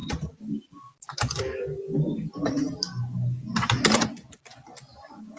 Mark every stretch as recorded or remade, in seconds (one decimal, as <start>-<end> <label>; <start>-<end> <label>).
0.0-5.4 recorded